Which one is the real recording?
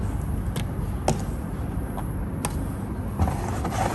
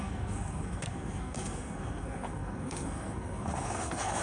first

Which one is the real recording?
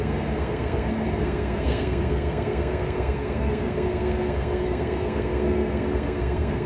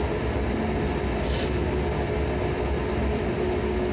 second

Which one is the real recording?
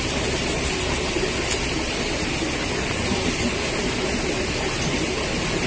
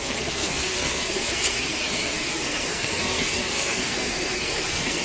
first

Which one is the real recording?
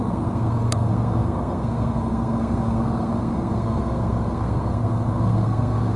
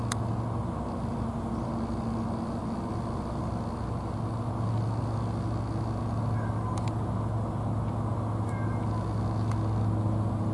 second